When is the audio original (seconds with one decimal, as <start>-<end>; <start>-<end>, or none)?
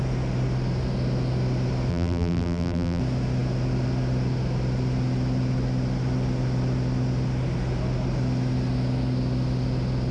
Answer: 0.0-1.9; 3.0-10.1